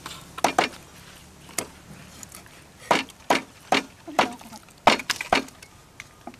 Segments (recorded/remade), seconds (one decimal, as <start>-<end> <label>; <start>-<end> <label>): 0.0-1.2 recorded; 1.2-4.6 remade; 4.6-5.0 recorded; 5.0-5.8 remade; 5.8-6.4 recorded